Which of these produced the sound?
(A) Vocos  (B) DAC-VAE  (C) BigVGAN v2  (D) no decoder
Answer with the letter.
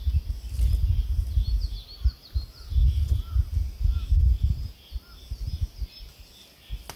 D